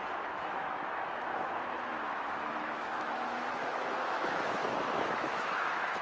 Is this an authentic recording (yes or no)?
no